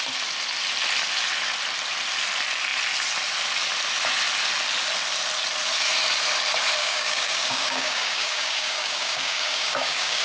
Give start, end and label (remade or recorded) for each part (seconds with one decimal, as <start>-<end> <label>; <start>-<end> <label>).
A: 0.0-6.8 recorded; 6.8-10.2 remade